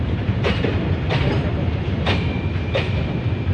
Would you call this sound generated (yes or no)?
yes